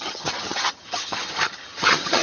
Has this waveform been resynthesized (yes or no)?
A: yes